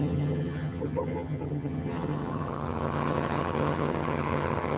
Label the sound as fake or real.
fake